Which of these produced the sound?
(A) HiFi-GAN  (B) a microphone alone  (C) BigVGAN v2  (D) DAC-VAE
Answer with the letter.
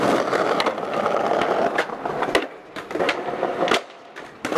B